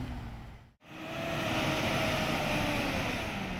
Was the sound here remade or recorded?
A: recorded